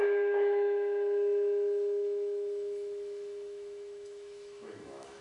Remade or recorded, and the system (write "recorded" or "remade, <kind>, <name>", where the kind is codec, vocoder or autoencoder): remade, autoencoder, DAC-VAE